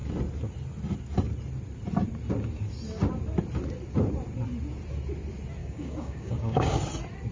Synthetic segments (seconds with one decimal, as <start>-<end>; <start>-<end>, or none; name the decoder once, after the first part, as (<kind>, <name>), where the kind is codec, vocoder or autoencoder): 5.6-6.8 (codec, DAC)